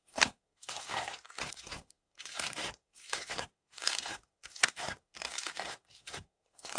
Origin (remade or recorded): remade